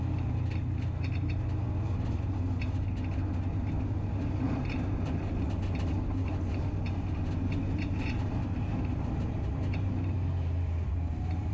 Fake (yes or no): no